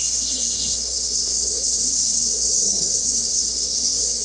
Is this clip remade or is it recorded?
remade